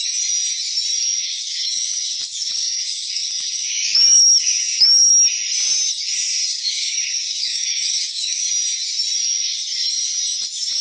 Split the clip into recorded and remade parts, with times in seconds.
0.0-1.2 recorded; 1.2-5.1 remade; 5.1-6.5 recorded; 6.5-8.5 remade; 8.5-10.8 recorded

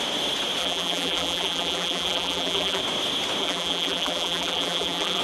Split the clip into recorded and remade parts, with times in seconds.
0.0-0.6 recorded; 0.6-2.8 remade; 2.8-3.4 recorded; 3.4-5.2 remade

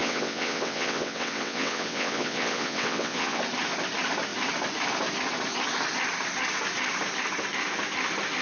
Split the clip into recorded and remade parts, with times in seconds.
0.0-3.4 remade; 3.4-8.4 recorded